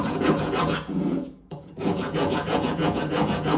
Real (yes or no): no